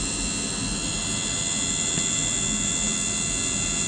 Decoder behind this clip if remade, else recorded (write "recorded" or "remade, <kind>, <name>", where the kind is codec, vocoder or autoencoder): recorded